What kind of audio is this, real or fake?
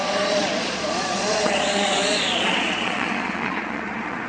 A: fake